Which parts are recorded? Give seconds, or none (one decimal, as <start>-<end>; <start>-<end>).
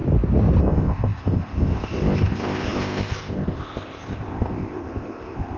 0.0-0.6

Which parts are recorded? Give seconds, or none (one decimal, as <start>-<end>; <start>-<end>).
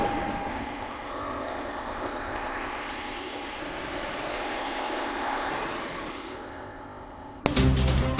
0.0-0.5; 3.6-4.3; 5.5-6.1; 7.4-8.2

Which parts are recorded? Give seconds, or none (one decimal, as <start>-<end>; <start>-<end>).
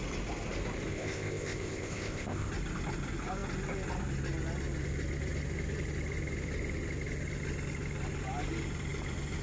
0.0-0.9; 2.5-9.4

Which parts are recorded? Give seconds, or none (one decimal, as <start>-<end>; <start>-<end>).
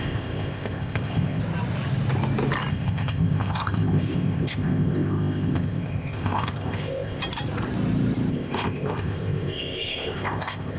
1.4-2.7; 7.2-8.3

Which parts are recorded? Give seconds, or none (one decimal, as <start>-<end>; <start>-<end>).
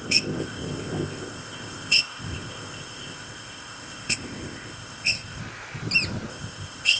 5.4-6.3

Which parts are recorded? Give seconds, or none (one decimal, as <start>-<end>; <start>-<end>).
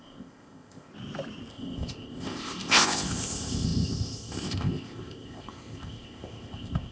0.9-1.5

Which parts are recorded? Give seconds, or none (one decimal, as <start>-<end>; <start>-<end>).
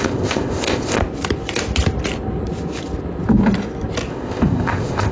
1.0-4.1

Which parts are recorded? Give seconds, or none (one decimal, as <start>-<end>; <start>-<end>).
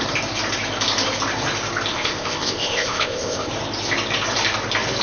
0.0-1.9; 3.5-5.0